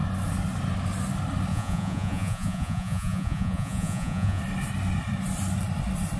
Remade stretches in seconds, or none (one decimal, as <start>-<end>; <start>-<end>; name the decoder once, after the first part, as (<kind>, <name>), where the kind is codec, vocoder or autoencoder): 1.5-4.4 (vocoder, Vocos)